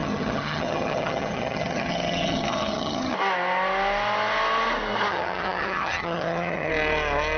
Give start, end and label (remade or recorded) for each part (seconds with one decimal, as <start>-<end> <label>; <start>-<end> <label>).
0.0-3.1 remade; 3.1-5.1 recorded; 5.1-6.7 remade; 6.7-7.4 recorded